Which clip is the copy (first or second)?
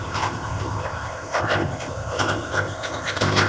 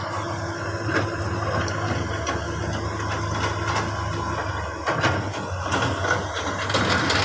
first